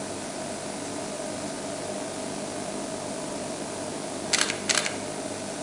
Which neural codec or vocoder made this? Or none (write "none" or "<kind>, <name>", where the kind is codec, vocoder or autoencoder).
none